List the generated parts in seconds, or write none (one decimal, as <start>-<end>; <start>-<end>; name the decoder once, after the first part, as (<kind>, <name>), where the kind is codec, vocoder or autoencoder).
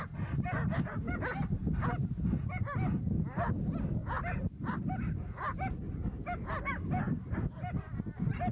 none